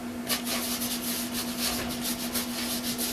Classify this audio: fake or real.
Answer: real